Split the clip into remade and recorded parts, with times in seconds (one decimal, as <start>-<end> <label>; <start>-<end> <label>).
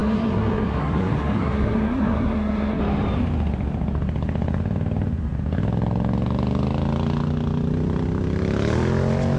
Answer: 0.0-2.8 remade; 2.8-9.4 recorded